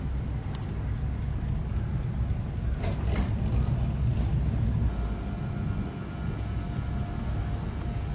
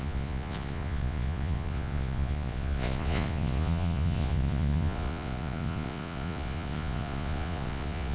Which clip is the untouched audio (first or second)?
first